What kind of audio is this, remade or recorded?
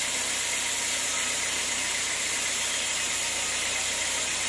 recorded